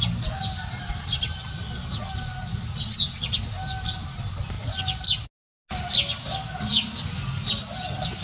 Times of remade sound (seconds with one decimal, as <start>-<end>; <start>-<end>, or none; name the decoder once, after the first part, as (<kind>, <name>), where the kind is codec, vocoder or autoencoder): none